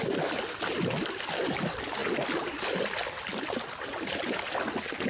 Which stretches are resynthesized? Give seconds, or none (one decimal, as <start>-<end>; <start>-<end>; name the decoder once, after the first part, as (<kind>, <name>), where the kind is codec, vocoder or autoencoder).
none